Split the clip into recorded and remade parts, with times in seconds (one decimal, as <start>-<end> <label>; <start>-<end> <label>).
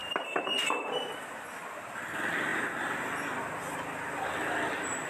0.0-0.9 remade; 0.9-5.1 recorded